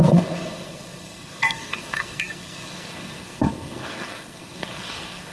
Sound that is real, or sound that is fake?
fake